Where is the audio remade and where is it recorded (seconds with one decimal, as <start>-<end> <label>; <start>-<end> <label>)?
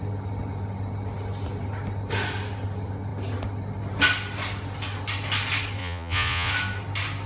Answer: 0.0-5.8 recorded; 5.8-6.5 remade; 6.5-7.3 recorded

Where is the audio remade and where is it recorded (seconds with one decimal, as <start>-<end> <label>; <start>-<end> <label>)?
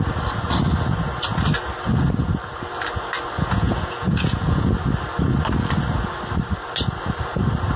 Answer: 0.0-3.4 recorded; 3.4-4.7 remade; 4.7-7.8 recorded